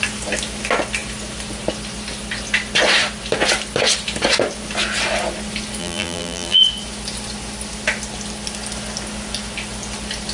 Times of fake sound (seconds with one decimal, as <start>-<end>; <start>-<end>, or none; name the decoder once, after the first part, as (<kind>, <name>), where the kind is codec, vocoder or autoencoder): 5.8-6.6 (vocoder, BigVGAN v2)